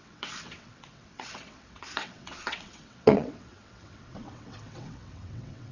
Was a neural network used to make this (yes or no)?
yes